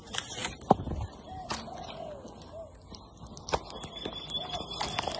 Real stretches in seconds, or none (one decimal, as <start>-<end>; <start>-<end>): 0.0-5.2